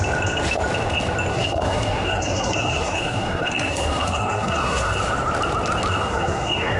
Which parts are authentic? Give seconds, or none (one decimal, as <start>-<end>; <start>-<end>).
0.0-1.3; 5.0-5.9